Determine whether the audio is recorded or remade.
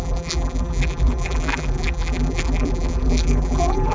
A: remade